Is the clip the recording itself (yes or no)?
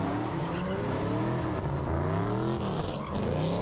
yes